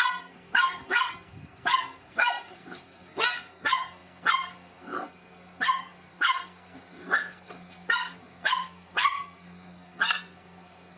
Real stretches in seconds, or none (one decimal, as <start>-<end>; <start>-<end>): none